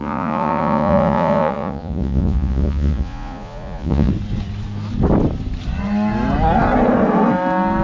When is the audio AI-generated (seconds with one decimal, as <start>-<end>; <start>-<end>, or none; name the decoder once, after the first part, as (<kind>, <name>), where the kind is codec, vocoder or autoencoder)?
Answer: 0.0-4.1 (vocoder, Vocos)